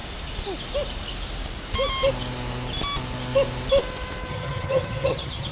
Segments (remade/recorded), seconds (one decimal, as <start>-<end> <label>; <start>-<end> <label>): 0.0-4.3 recorded; 4.3-5.5 remade